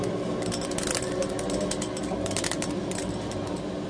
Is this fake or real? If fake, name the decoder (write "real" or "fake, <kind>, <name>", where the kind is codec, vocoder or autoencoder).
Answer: real